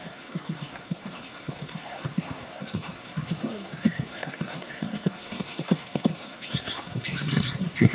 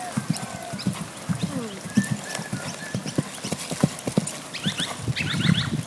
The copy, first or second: first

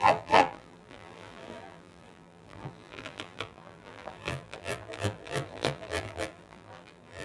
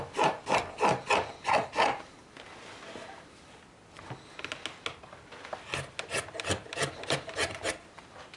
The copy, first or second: first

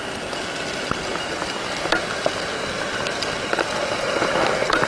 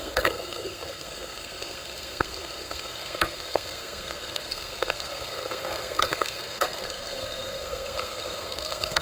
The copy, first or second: second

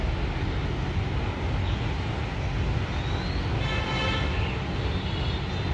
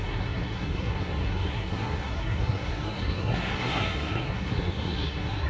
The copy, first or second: second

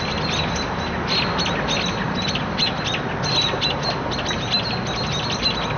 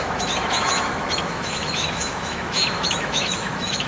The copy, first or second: second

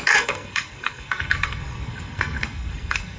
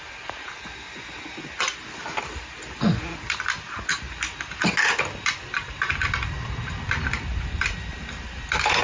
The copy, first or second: first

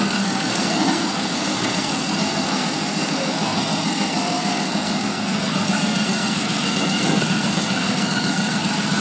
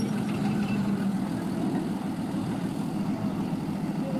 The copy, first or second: first